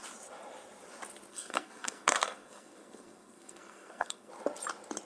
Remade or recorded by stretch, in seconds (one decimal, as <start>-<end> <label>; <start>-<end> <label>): 0.0-1.3 recorded; 1.3-4.3 remade; 4.3-5.1 recorded